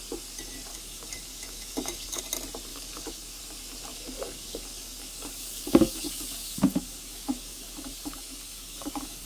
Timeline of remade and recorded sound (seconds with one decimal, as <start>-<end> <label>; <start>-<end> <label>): 0.0-0.7 recorded; 0.7-2.2 remade; 2.2-2.7 recorded; 2.7-3.4 remade; 3.4-3.9 recorded; 3.9-9.3 remade